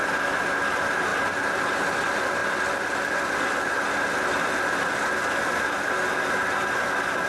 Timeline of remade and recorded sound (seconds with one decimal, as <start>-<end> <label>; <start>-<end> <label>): 0.0-7.3 recorded